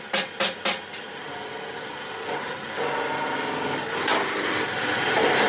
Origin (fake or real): real